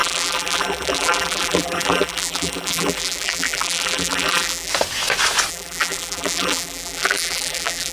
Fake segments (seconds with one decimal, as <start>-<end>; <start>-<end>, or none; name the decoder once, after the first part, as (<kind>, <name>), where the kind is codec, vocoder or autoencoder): 0.0-4.7 (vocoder, BigVGAN v2); 5.5-7.9

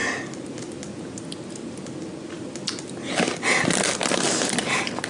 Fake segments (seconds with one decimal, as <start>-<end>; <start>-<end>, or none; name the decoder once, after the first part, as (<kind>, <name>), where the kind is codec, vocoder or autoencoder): none

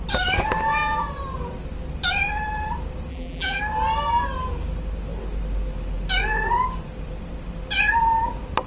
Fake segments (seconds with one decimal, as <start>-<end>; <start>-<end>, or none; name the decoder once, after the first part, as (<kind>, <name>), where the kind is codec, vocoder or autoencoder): 3.1-3.6 (vocoder, BigVGAN v2)

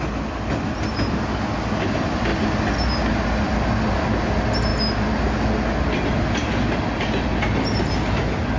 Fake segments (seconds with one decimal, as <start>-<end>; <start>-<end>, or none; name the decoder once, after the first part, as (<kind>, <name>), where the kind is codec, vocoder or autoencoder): none

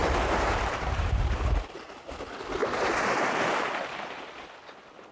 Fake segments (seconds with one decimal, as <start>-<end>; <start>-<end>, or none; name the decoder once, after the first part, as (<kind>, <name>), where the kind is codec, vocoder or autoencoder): 0.0-1.8 (vocoder, BigVGAN v2); 2.6-4.5

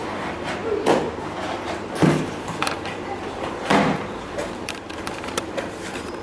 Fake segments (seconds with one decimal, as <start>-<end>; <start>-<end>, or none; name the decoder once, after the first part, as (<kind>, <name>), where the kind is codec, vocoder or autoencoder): 0.0-0.6 (vocoder, BigVGAN v2); 2.4-6.2

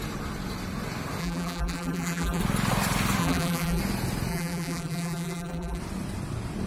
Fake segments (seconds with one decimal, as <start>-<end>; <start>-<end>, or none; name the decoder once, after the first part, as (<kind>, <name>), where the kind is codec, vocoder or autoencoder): 1.2-2.4 (vocoder, BigVGAN v2); 3.2-3.8; 4.3-5.8